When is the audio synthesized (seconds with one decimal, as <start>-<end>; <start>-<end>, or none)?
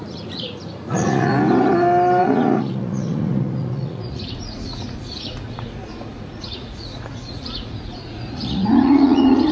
0.0-1.3; 2.2-9.5